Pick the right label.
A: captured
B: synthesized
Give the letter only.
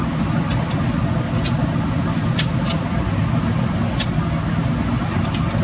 A